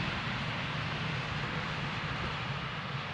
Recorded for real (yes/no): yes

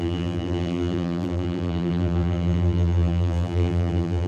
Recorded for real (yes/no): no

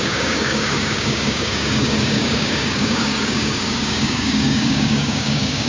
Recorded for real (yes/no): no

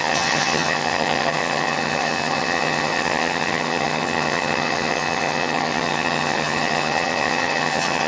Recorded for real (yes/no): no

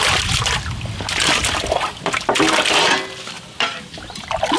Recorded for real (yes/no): yes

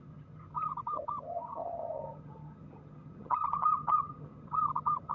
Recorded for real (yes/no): no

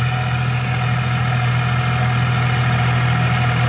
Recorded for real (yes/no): yes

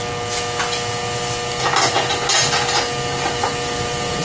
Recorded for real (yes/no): yes